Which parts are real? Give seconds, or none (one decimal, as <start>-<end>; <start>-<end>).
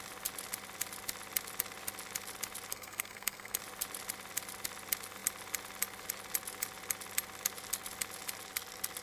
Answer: 0.0-2.7; 3.6-9.0